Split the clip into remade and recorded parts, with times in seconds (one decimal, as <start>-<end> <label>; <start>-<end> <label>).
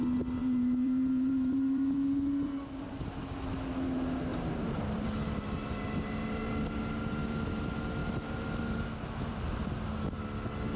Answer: 0.0-0.4 recorded; 0.4-2.5 remade; 2.5-4.3 recorded; 4.3-6.5 remade; 6.5-8.0 recorded; 8.0-8.8 remade; 8.8-10.8 recorded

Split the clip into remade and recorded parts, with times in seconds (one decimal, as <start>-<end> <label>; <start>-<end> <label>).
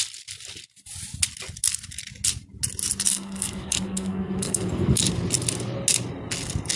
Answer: 0.0-3.1 recorded; 3.1-5.0 remade; 5.0-6.8 recorded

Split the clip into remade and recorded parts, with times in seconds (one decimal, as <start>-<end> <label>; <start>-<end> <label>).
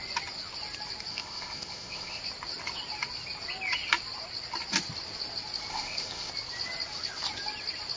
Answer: 0.0-1.1 recorded; 1.1-2.2 remade; 2.2-5.7 recorded; 5.7-6.3 remade; 6.3-8.0 recorded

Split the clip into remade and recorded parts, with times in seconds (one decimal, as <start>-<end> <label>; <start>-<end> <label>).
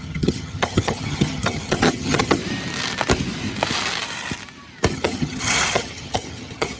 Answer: 0.0-2.4 remade; 2.4-4.9 recorded; 4.9-6.8 remade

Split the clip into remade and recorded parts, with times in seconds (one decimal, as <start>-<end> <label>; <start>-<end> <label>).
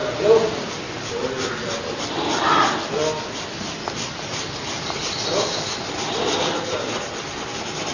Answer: 0.0-2.1 remade; 2.1-7.9 recorded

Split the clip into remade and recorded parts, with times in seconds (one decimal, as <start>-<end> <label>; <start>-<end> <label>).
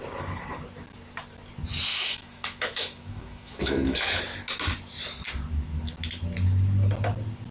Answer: 0.0-1.9 recorded; 1.9-4.2 remade; 4.2-7.5 recorded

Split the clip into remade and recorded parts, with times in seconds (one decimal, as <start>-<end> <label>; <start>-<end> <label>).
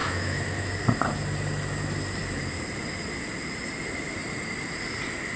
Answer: 0.0-0.7 remade; 0.7-5.4 recorded